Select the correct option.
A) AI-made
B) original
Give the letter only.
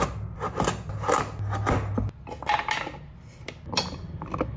B